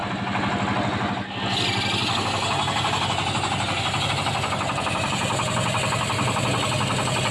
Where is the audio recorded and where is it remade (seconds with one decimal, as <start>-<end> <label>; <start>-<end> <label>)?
0.0-7.3 recorded